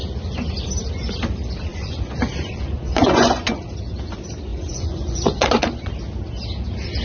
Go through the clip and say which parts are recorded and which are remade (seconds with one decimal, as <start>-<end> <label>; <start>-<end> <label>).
0.0-1.7 recorded; 1.7-3.6 remade; 3.6-4.5 recorded; 4.5-5.9 remade; 5.9-7.0 recorded